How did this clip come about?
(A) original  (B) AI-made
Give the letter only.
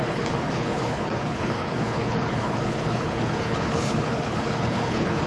B